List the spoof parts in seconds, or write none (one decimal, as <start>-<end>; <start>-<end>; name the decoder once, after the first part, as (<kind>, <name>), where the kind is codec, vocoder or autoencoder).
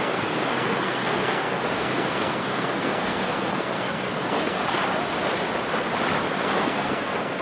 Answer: 0.0-4.6 (codec, SNAC); 6.3-7.4